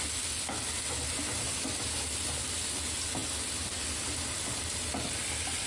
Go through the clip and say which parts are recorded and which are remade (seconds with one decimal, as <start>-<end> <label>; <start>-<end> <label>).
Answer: 0.0-5.7 recorded